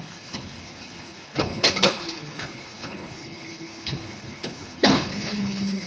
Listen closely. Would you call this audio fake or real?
fake